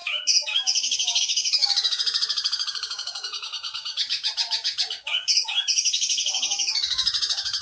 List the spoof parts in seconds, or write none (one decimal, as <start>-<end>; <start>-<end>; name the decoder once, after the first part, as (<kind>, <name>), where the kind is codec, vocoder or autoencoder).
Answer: 0.0-7.6 (codec, DAC)